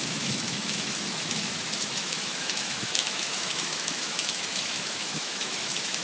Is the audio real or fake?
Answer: fake